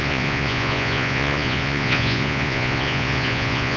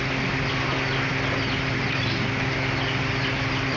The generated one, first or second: first